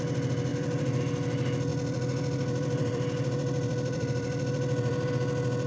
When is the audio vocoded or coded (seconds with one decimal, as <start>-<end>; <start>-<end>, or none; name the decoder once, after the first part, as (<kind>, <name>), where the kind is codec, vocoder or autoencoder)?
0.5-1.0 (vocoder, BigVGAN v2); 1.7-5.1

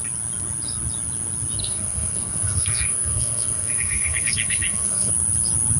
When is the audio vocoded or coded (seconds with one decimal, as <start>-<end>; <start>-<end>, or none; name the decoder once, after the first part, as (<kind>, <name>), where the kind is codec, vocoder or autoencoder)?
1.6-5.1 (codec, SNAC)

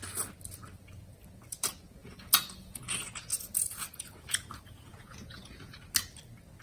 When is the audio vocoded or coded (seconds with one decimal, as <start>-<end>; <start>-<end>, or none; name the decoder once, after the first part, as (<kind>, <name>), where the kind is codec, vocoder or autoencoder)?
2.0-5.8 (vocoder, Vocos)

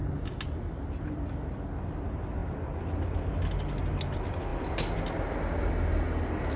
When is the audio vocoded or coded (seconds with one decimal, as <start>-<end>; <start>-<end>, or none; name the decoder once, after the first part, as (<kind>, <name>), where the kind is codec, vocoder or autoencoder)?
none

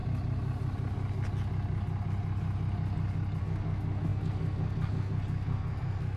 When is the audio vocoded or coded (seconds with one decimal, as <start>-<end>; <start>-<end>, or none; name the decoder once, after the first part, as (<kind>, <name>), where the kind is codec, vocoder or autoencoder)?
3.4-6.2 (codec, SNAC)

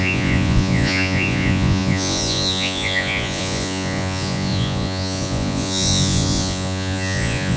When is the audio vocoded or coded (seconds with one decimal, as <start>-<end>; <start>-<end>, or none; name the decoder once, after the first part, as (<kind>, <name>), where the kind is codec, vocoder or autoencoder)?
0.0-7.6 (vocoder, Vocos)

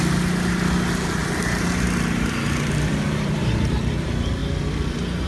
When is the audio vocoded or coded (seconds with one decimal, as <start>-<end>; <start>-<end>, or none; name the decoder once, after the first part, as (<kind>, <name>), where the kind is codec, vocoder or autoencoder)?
1.2-3.9 (vocoder, BigVGAN v2)

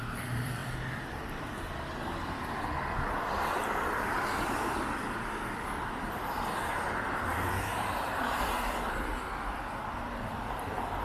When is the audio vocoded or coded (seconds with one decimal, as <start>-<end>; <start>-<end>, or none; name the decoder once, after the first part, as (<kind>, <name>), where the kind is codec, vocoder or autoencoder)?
0.0-11.0 (vocoder, BigVGAN v2)